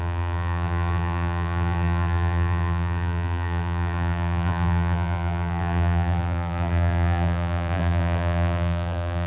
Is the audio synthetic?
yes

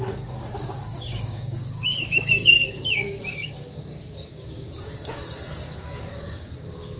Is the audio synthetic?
yes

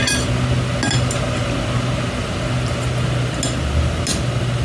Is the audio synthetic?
no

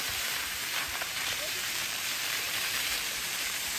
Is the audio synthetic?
yes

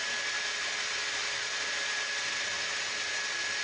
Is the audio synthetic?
no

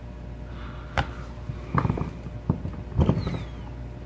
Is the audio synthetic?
no